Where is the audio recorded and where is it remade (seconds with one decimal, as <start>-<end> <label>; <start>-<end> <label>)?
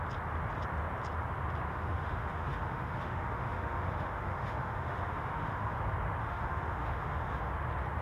0.0-1.7 recorded; 1.7-5.8 remade; 5.8-6.2 recorded; 6.2-7.5 remade; 7.5-8.0 recorded